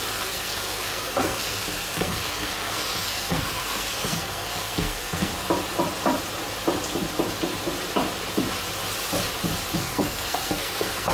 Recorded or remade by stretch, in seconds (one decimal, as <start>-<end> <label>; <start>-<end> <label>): 0.0-5.3 remade; 5.3-9.8 recorded; 9.8-11.1 remade